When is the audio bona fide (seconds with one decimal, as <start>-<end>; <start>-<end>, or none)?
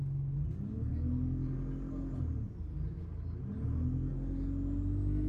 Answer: 0.0-5.3